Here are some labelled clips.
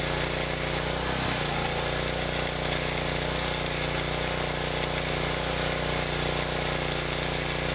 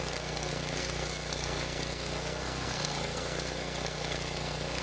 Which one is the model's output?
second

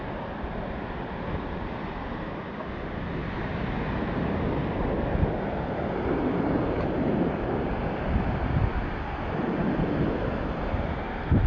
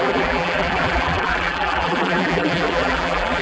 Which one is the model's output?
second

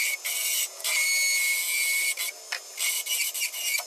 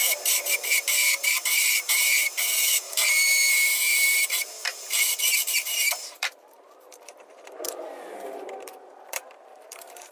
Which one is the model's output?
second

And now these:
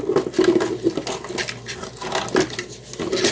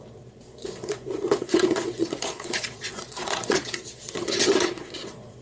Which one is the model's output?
second